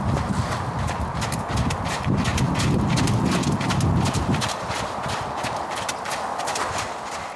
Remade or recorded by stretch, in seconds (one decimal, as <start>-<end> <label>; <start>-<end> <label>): 0.0-7.4 recorded